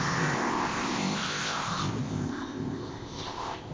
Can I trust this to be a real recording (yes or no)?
no